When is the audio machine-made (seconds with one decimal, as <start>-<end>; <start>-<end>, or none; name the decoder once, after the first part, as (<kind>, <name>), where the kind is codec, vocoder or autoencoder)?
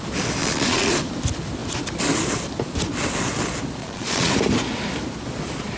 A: 0.4-0.9 (vocoder, Vocos); 3.8-4.3